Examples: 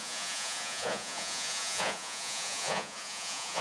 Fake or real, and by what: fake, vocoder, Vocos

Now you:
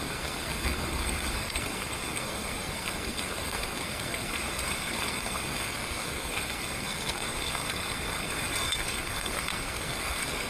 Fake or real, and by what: fake, codec, SNAC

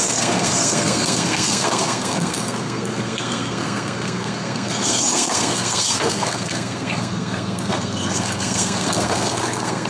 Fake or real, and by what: fake, codec, SNAC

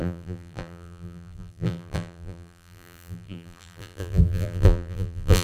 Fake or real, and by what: fake, vocoder, BigVGAN v2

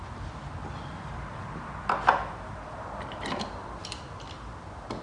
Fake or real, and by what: real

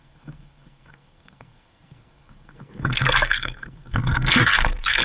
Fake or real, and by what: fake, codec, SNAC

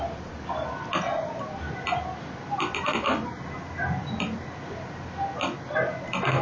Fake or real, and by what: real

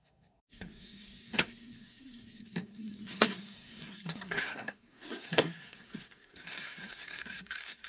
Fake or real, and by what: fake, codec, SNAC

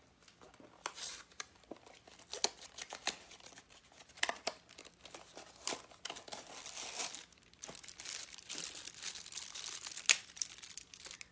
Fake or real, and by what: real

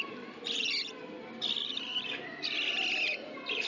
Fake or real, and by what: real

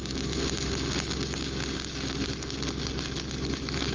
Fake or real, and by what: real